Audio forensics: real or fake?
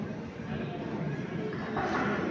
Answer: real